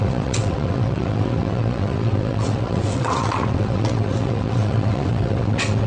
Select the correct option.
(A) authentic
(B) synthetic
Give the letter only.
B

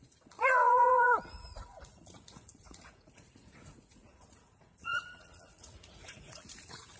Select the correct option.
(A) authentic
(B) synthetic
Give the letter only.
B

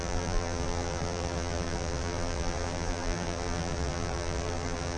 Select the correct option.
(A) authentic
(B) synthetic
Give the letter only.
B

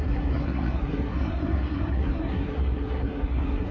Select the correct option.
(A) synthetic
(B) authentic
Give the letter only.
A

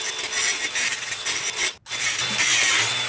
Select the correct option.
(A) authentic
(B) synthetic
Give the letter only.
A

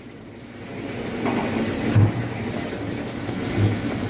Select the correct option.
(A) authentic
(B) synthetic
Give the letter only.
A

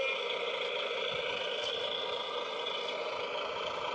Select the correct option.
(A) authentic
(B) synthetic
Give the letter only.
A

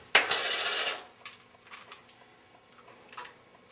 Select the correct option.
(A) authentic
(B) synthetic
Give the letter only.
A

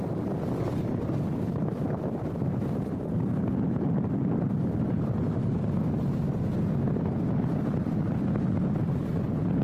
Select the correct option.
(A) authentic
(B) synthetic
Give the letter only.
A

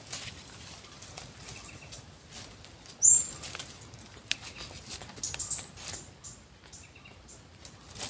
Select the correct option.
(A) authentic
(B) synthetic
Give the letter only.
A